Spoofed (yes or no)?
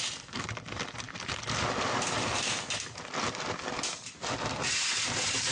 yes